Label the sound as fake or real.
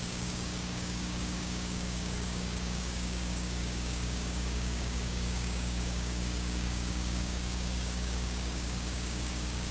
fake